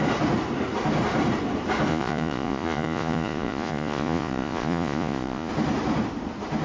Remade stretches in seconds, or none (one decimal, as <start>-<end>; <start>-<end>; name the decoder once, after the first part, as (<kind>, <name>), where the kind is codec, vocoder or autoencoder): 1.9-5.5 (vocoder, Vocos)